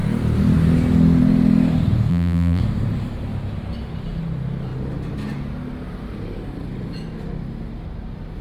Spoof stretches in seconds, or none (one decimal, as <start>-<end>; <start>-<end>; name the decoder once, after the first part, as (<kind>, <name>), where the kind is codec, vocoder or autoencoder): 2.1-2.6 (vocoder, BigVGAN v2)